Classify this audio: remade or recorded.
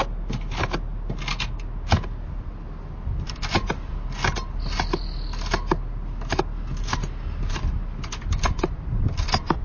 recorded